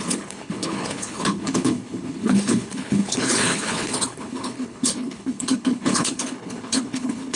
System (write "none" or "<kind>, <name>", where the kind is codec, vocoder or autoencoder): codec, HILCodec